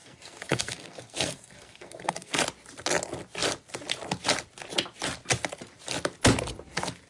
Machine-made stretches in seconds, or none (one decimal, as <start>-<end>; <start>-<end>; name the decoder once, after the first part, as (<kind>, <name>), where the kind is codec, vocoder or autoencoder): 0.0-2.4 (codec, SNAC)